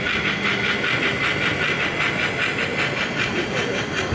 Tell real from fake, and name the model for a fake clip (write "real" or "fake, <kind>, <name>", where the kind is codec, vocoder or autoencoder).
real